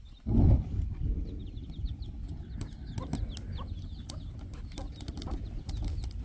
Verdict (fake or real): real